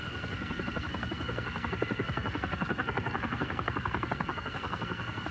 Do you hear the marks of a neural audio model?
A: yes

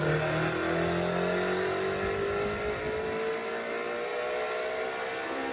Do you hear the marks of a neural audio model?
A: no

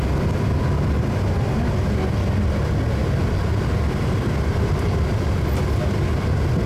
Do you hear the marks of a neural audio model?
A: no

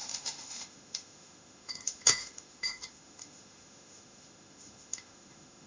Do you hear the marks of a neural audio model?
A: yes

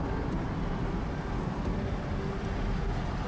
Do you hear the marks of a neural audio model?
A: no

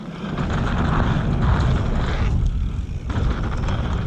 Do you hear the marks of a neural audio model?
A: no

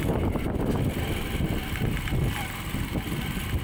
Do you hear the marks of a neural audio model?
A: no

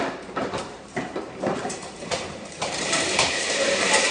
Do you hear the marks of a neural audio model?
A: yes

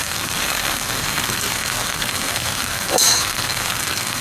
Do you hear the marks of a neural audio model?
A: yes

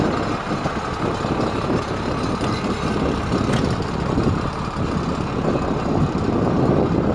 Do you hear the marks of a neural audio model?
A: no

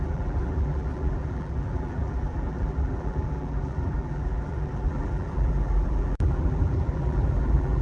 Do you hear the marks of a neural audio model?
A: yes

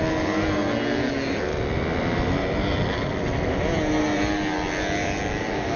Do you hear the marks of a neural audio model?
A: no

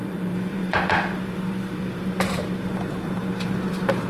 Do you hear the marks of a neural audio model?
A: yes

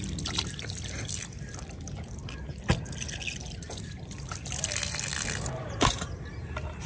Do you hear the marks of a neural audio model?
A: no